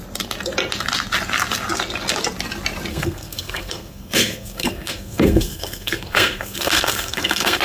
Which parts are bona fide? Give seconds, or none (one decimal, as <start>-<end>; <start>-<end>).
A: 0.0-2.9